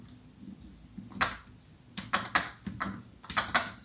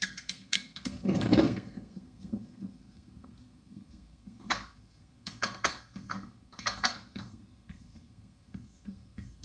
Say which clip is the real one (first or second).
first